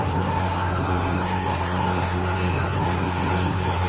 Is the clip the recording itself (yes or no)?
no